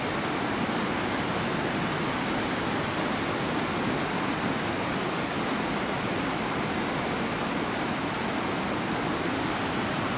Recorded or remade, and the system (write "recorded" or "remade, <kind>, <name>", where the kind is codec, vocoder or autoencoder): recorded